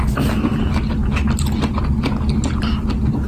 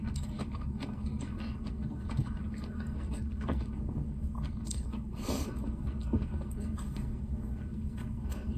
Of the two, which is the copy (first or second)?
second